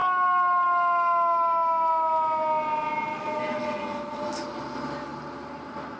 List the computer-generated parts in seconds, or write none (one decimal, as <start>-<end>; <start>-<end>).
3.1-3.8